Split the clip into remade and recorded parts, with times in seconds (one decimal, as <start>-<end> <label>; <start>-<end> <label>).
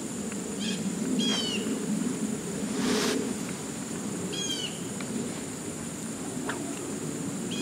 0.0-1.3 remade; 1.3-1.9 recorded; 1.9-4.5 remade; 4.5-6.8 recorded; 6.8-7.6 remade